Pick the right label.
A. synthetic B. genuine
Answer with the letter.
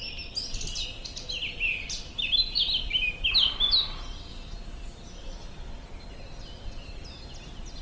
B